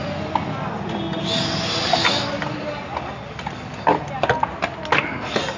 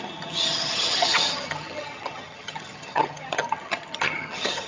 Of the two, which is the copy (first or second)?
second